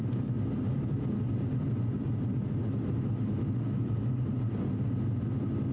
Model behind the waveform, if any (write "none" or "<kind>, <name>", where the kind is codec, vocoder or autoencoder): none